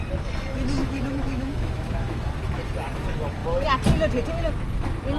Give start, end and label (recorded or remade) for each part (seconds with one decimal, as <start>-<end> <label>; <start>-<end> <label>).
0.0-0.8 recorded; 0.8-2.3 remade; 2.3-5.2 recorded